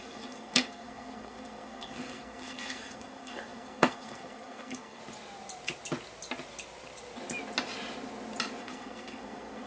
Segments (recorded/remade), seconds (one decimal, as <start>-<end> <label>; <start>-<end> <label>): 0.0-5.0 remade; 5.0-8.6 recorded; 8.6-9.7 remade